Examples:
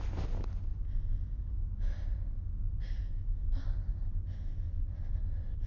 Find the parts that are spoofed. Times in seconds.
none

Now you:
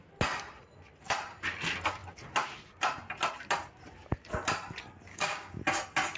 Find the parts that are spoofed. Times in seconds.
5.1-5.6 (codec, DAC)

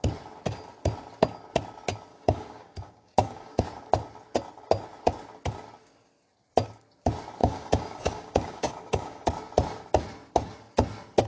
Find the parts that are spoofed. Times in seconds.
2.1-3.6 (codec, DAC); 7.4-9.3

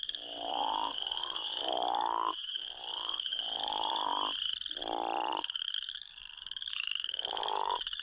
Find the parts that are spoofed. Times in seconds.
0.0-4.1 (codec, DAC); 5.4-8.0

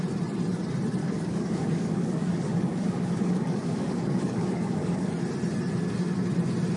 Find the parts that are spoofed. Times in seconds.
1.0-5.1 (codec, DAC)

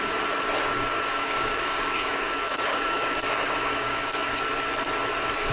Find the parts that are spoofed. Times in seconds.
1.1-4.3 (codec, DAC)